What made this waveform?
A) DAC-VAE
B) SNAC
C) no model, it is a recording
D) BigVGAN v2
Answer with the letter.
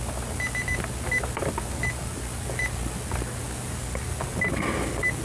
C